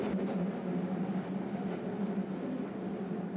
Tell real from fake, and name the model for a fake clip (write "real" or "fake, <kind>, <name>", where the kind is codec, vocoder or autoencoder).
real